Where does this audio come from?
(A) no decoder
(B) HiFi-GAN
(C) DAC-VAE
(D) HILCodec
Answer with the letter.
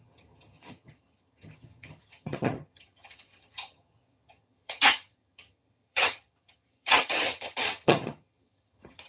B